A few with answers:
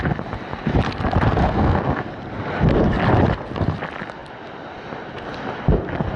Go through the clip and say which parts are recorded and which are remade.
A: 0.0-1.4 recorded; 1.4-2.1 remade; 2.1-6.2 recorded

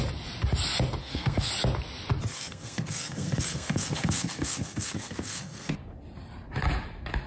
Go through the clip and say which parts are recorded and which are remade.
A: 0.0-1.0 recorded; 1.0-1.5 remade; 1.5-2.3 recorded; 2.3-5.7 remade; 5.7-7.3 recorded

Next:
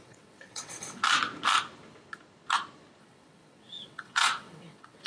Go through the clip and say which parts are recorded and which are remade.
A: 0.0-1.0 remade; 1.0-3.0 recorded; 3.0-5.1 remade

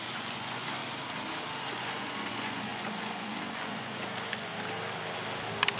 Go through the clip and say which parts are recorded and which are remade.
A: 0.0-0.8 remade; 0.8-1.7 recorded; 1.7-4.5 remade; 4.5-5.8 recorded

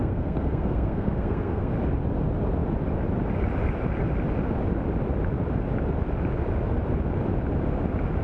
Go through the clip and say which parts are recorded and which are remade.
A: 0.0-1.7 remade; 1.7-8.2 recorded